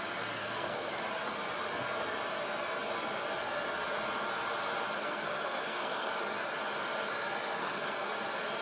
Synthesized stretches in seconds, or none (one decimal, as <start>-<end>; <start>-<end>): 0.4-0.9; 5.0-6.1; 7.6-8.1

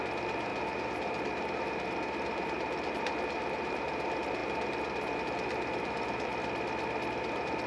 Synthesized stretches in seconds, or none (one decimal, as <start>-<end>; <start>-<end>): 0.0-6.3; 7.1-7.7